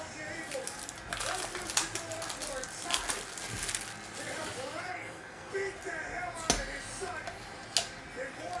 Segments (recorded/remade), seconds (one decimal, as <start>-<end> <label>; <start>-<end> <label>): 0.0-4.9 recorded; 4.9-5.5 remade; 5.5-8.6 recorded